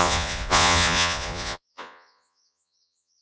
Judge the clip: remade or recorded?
remade